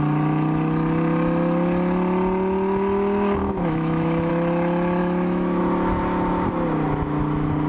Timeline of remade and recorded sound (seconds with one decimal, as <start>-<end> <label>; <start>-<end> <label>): 0.0-3.4 recorded; 3.4-4.3 remade; 4.3-5.0 recorded; 5.0-5.6 remade; 5.6-7.7 recorded